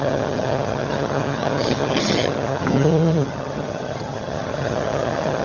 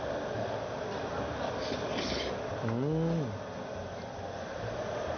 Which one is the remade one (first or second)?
first